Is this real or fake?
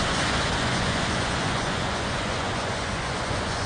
fake